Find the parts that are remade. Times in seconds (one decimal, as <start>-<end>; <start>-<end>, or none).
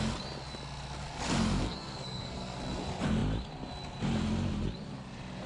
1.6-2.6